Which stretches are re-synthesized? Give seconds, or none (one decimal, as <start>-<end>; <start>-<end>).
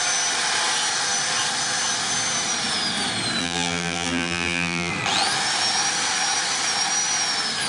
3.4-4.9